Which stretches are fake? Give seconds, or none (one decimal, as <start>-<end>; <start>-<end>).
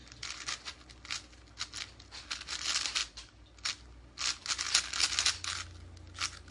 none